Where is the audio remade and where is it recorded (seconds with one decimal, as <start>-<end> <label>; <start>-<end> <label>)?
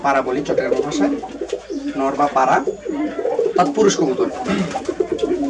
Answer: 0.0-5.5 recorded